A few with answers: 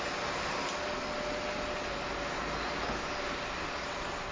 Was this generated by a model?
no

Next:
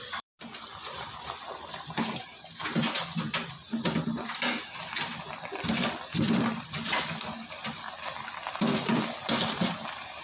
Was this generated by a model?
yes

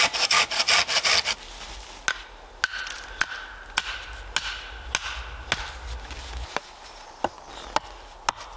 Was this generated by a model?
no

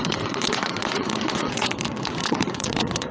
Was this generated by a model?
yes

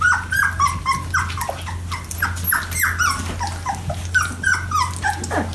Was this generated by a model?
no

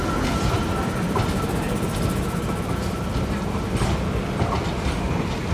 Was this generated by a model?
no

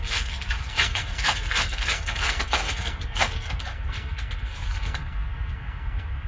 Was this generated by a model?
yes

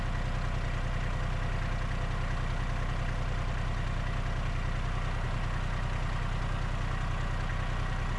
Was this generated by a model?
no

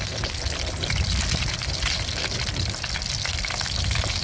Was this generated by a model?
no